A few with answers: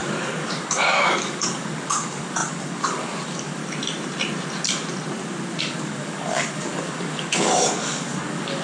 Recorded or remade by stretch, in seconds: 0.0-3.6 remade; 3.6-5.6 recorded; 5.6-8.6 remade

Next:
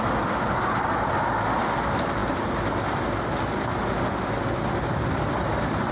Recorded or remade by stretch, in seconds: 0.0-5.9 recorded

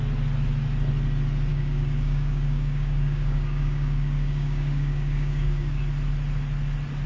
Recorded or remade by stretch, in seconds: 0.0-1.5 recorded; 1.5-5.8 remade; 5.8-7.1 recorded

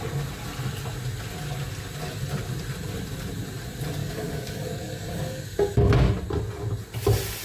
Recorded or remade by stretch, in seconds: 0.0-4.0 recorded; 4.0-5.9 remade; 5.9-7.4 recorded